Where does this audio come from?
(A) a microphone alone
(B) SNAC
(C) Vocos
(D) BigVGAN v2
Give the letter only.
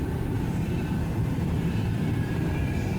D